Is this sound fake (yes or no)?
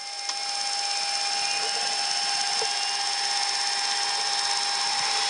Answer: no